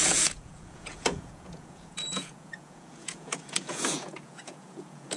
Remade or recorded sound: remade